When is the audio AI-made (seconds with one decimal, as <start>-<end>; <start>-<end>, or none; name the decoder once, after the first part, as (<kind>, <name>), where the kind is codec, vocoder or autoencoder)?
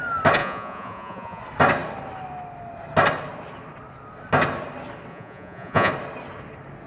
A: 0.4-1.4 (vocoder, Vocos); 5.1-5.9